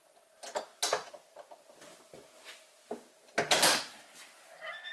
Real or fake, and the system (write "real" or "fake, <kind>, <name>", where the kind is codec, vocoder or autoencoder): real